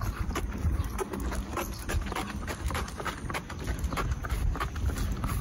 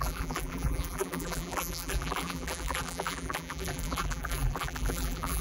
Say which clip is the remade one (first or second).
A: second